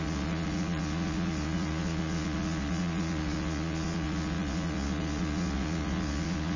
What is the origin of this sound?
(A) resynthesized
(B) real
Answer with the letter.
A